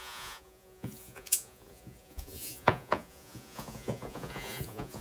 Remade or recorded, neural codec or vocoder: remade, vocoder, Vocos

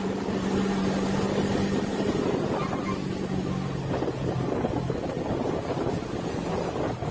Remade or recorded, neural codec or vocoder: recorded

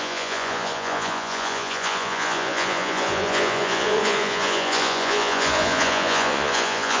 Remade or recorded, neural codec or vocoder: remade, vocoder, Vocos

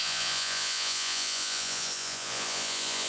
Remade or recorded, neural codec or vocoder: remade, vocoder, Vocos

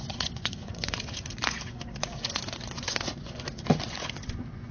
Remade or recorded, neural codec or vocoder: remade, vocoder, Vocos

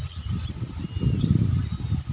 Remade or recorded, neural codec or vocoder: recorded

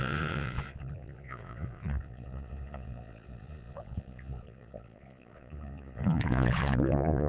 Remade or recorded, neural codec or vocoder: remade, vocoder, Vocos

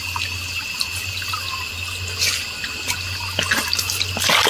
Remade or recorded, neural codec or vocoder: recorded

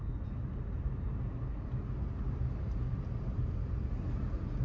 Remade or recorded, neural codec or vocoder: recorded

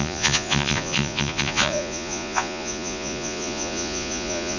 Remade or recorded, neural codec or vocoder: remade, vocoder, Vocos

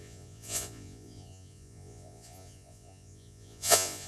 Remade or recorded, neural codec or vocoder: remade, vocoder, Vocos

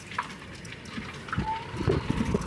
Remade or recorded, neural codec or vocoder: recorded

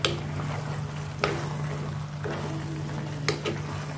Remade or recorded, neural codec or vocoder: recorded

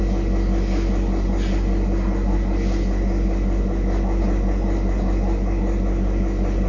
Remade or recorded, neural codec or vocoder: recorded